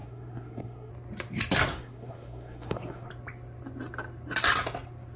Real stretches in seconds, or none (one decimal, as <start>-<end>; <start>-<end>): 0.9-1.7; 3.1-5.2